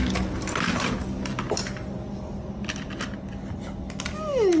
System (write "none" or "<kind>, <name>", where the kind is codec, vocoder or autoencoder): none